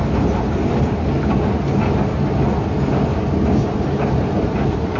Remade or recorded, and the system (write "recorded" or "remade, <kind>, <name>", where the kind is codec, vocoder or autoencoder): recorded